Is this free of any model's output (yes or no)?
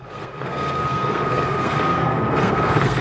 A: no